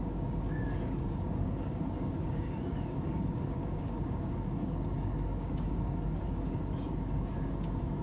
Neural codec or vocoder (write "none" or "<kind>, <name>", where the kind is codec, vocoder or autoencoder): codec, DAC